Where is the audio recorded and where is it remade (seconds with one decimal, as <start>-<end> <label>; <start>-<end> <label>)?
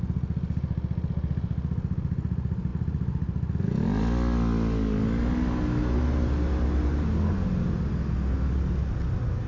0.0-9.5 recorded